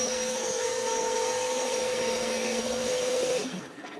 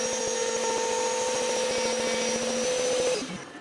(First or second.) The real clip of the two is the second